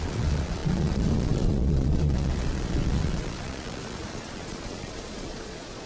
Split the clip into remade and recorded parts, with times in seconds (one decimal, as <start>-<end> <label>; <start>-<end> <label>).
0.0-5.9 remade